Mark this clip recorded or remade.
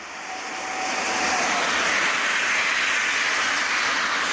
recorded